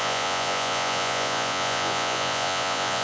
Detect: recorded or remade remade